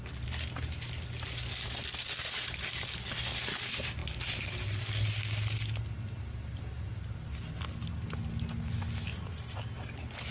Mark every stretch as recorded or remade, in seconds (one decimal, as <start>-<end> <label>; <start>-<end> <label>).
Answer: 0.0-10.3 recorded